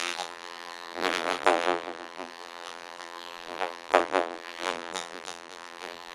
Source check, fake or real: fake